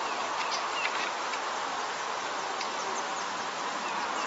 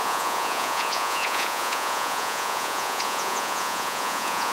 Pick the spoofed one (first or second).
second